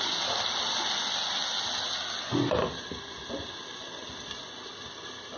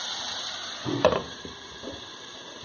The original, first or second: first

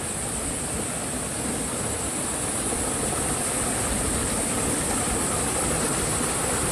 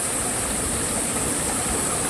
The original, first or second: first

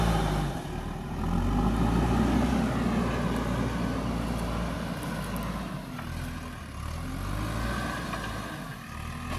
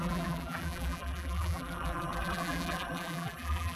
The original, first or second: first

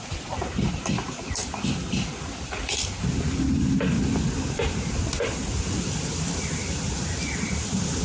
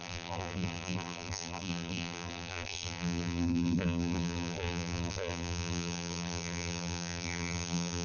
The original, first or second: first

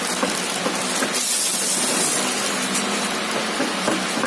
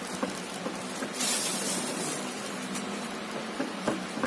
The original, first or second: first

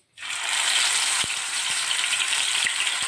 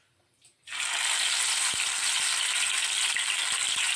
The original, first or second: second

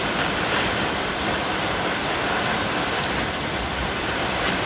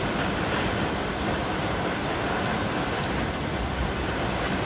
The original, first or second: second